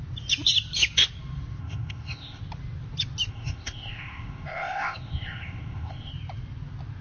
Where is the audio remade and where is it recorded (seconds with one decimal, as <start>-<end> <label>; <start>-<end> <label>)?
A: 0.0-1.6 recorded; 1.6-2.4 remade; 2.4-3.3 recorded; 3.3-6.1 remade; 6.1-7.0 recorded